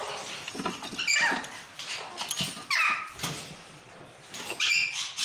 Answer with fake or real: real